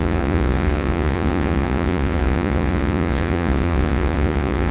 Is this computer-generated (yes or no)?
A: yes